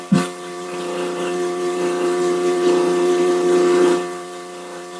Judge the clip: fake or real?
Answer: fake